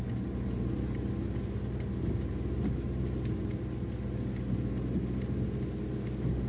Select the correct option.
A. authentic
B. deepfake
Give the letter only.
A